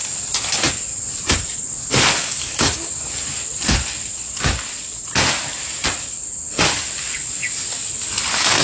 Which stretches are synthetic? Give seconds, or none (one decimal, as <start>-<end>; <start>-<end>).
2.2-2.9